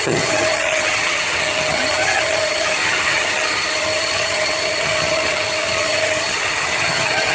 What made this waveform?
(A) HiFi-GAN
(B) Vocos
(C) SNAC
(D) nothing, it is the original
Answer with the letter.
A